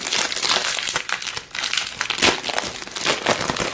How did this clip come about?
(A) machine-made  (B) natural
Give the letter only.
B